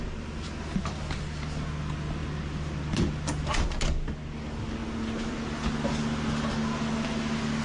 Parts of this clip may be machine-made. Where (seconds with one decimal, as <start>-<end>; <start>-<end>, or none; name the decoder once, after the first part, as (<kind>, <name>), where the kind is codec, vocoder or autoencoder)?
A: none

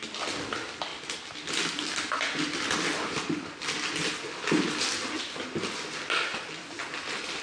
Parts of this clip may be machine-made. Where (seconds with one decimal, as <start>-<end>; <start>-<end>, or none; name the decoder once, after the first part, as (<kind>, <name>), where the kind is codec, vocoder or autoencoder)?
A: none